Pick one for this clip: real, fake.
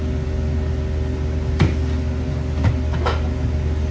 real